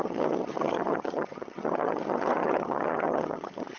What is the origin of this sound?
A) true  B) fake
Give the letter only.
B